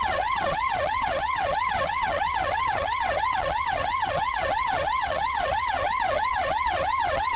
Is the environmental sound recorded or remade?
remade